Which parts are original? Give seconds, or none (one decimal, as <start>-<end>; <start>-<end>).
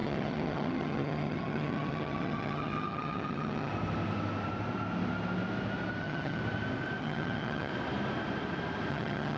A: 3.7-6.0; 6.4-7.0; 7.7-8.9